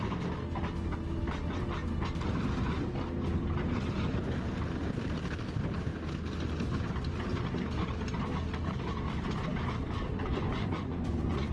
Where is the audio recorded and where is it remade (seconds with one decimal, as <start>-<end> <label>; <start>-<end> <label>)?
0.0-10.3 recorded; 10.3-11.5 remade